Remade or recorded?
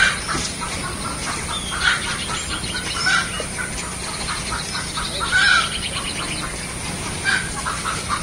recorded